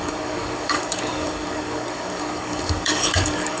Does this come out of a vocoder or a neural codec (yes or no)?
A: yes